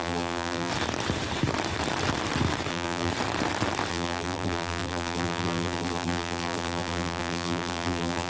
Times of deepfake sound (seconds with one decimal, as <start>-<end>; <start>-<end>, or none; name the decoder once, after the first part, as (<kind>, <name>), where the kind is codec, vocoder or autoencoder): 0.0-0.7 (vocoder, BigVGAN v2); 2.7-3.1; 3.9-8.3